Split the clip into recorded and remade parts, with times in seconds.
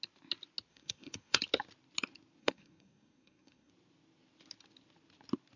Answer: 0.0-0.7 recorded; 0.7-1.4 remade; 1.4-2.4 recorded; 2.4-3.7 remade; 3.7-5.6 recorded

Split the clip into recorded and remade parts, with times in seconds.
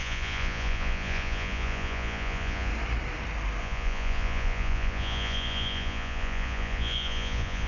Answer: 0.0-2.7 remade; 2.7-3.6 recorded; 3.6-7.7 remade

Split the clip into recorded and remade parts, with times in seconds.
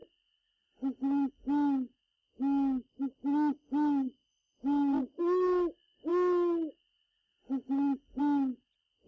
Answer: 0.0-9.1 recorded